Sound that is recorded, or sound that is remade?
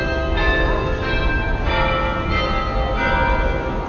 recorded